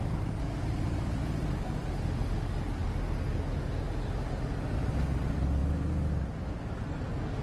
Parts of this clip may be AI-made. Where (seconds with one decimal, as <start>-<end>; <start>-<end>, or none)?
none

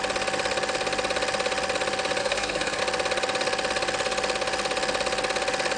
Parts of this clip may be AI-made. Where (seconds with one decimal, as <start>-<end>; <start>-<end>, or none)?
2.2-2.8

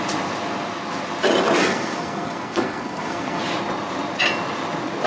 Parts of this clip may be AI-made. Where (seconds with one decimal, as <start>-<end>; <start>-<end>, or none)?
1.6-3.4

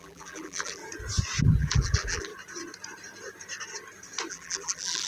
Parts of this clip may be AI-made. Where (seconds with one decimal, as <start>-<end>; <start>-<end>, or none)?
0.0-0.8; 1.4-2.3; 4.3-5.1

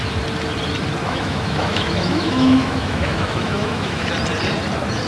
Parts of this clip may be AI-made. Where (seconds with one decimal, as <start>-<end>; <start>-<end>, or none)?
1.0-4.1

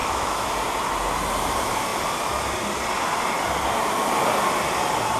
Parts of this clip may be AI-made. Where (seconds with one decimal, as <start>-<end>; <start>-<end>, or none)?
0.0-0.5